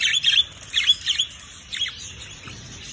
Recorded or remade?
recorded